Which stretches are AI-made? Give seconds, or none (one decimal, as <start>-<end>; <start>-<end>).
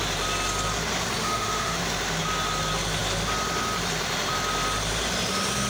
1.2-1.8